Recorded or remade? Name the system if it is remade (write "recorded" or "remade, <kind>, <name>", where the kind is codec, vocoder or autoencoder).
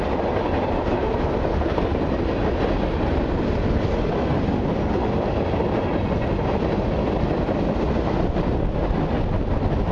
recorded